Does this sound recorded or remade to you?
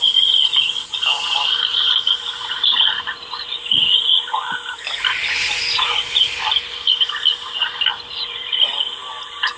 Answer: recorded